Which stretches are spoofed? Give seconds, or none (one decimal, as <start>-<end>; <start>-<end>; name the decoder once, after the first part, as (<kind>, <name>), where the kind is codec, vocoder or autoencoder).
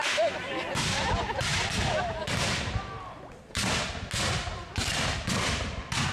none